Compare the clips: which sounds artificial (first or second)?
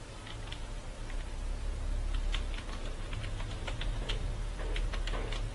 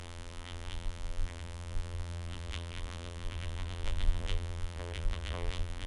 second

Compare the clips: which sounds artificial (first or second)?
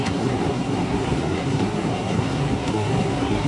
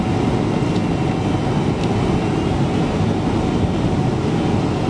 first